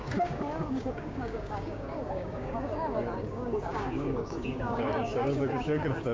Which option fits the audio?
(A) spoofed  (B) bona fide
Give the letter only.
A